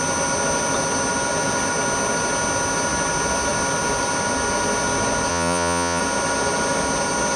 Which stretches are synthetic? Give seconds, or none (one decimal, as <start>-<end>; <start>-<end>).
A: 5.3-6.0